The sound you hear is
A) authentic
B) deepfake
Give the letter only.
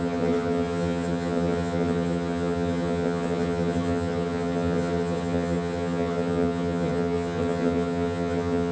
B